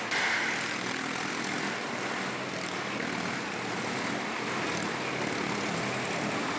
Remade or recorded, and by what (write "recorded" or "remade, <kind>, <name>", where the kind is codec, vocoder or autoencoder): recorded